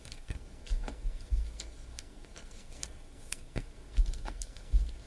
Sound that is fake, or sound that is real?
fake